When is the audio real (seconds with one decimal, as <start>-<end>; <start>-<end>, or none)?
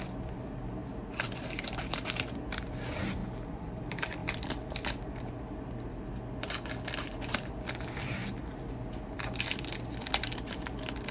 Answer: 0.0-0.8; 1.8-3.2; 3.8-4.2; 4.7-11.1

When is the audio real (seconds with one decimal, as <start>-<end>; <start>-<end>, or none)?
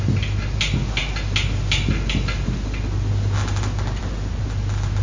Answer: 0.0-5.0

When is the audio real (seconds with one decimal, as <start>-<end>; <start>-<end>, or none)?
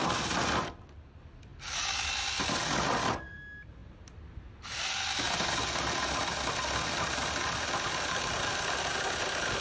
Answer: 0.0-9.6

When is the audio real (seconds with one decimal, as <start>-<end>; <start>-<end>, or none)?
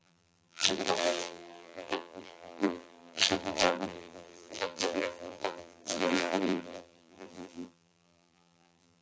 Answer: none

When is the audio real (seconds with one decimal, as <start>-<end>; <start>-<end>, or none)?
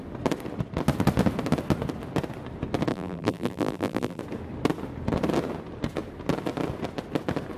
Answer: 0.0-2.9; 4.2-7.6